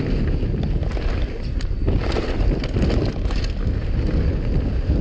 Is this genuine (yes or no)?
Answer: yes